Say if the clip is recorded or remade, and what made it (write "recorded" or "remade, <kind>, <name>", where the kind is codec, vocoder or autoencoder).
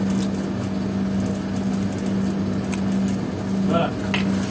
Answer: recorded